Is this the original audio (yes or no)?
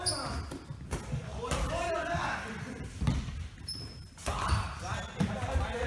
yes